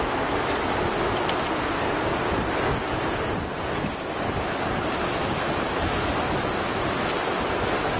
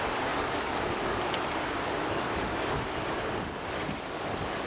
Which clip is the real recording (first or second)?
first